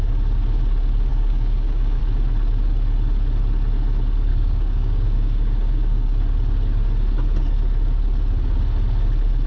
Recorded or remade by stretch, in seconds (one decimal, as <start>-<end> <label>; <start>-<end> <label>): 0.0-1.1 recorded; 1.1-2.0 remade; 2.0-4.3 recorded; 4.3-6.2 remade; 6.2-9.5 recorded